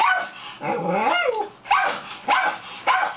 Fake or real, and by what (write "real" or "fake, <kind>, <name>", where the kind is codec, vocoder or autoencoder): real